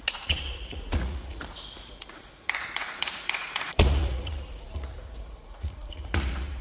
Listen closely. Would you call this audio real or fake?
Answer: fake